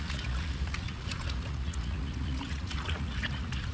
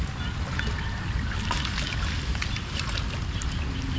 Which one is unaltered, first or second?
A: second